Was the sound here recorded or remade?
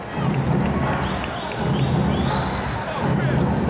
recorded